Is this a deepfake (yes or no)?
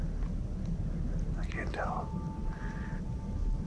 no